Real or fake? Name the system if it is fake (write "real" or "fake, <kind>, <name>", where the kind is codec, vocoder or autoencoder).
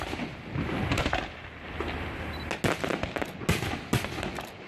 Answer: real